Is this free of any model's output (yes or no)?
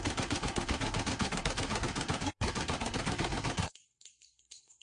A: no